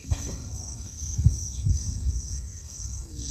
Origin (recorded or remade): remade